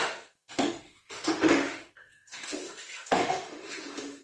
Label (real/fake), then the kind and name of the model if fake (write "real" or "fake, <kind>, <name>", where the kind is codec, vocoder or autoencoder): fake, autoencoder, DAC-VAE